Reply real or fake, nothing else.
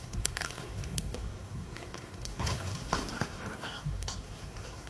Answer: fake